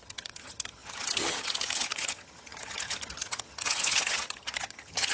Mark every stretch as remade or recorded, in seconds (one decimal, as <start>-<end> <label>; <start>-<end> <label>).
0.0-5.1 remade